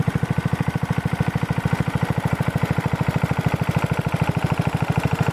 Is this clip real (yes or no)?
yes